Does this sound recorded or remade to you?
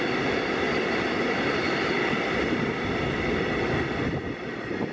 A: recorded